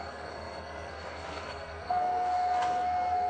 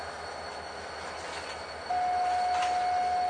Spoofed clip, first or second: first